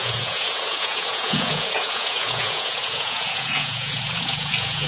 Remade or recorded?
remade